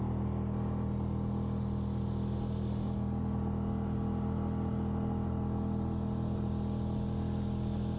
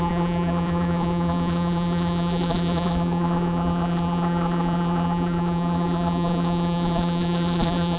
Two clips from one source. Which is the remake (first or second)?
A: second